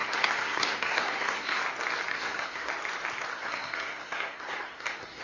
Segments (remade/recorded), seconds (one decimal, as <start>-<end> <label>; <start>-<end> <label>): 0.0-1.6 remade; 1.6-2.1 recorded; 2.1-2.7 remade; 2.7-3.3 recorded; 3.3-5.2 remade

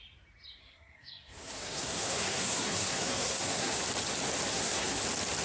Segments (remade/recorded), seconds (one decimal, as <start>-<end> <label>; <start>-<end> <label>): 0.0-0.6 recorded; 0.6-3.8 remade; 3.8-4.5 recorded; 4.5-5.0 remade; 5.0-5.4 recorded

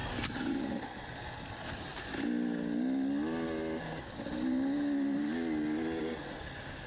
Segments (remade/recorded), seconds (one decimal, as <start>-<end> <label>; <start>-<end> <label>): 0.0-6.9 recorded

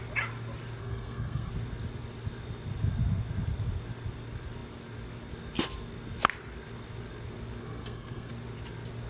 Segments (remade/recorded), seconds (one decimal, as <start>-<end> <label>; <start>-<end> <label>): 0.0-0.8 recorded; 0.8-1.5 remade; 1.5-7.6 recorded; 7.6-8.3 remade; 8.3-9.1 recorded

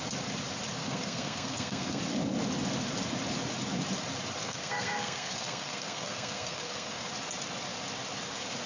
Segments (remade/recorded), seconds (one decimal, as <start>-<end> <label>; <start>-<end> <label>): 0.0-0.8 recorded; 0.8-2.0 remade; 2.0-4.4 recorded; 4.4-7.0 remade; 7.0-8.7 recorded

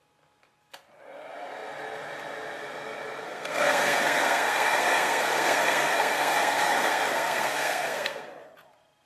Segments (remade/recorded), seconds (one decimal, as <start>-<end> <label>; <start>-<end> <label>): 0.0-3.2 recorded; 3.2-8.3 remade; 8.3-9.1 recorded